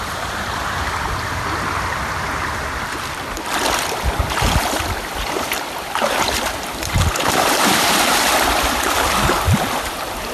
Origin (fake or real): fake